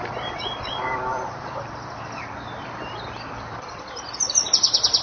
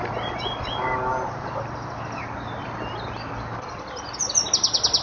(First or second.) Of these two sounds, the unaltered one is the second